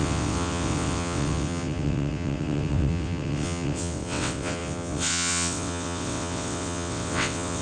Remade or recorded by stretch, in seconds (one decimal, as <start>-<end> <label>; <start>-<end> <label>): 0.0-7.6 remade